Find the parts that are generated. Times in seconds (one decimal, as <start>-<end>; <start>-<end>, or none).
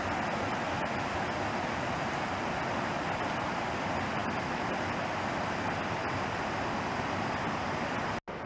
none